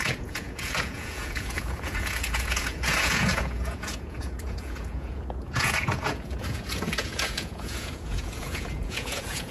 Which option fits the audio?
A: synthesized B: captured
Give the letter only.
A